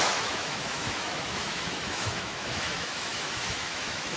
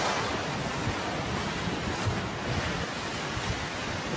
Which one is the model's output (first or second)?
first